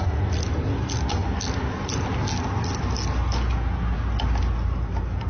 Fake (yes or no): no